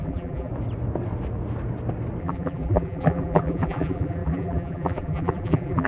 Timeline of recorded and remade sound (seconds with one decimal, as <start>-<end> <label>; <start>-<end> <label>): 0.0-0.5 remade; 0.5-2.2 recorded; 2.2-5.9 remade